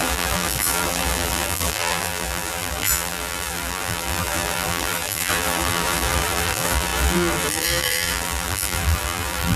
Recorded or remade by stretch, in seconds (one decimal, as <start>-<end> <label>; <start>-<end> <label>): 0.0-9.6 remade